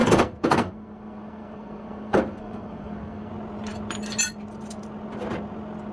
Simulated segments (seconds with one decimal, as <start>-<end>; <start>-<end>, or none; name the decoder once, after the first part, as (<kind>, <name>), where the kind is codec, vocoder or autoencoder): 0.0-3.3 (codec, SNAC)